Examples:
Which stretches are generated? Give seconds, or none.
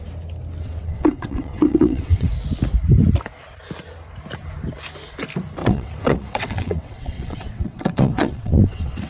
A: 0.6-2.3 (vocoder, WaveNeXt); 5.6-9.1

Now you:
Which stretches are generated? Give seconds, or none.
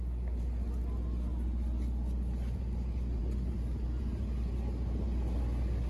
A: none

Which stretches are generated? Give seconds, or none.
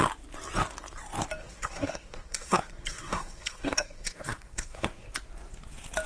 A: 1.4-5.1 (codec, SNAC)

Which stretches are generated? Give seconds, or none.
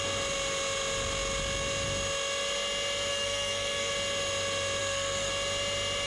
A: 3.1-3.9 (codec, SNAC); 4.8-5.3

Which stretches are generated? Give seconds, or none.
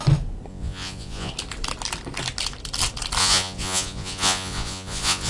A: 0.5-1.3 (vocoder, Vocos); 3.2-5.3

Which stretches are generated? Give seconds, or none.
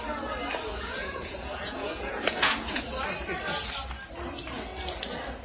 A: 0.7-2.8 (vocoder, Vocos)